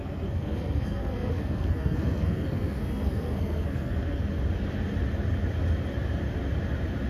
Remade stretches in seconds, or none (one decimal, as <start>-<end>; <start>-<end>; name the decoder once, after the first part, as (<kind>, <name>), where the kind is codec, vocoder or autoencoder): 0.0-4.2 (codec, SNAC)